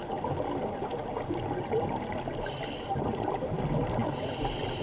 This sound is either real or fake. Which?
real